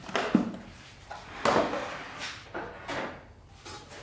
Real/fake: real